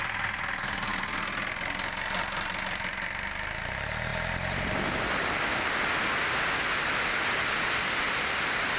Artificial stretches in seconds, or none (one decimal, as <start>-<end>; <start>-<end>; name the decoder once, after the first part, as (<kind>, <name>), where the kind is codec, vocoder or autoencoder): none